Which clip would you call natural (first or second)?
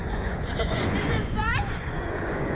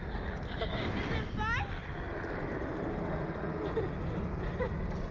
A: second